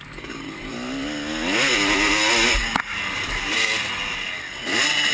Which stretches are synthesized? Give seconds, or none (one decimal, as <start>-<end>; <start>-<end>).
none